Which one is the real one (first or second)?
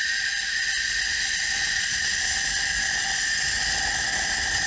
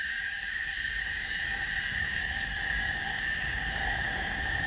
first